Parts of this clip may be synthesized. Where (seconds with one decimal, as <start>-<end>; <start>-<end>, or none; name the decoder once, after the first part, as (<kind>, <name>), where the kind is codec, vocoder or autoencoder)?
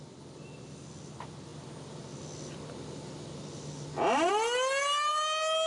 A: none